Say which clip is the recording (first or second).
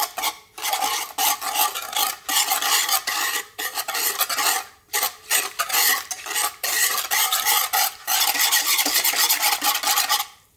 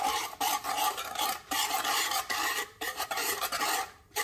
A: first